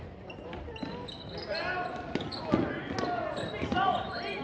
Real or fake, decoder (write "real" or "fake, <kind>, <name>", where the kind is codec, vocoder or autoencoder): real